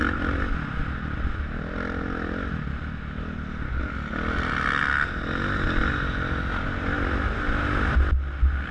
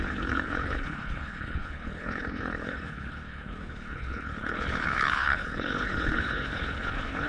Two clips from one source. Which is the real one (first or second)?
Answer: first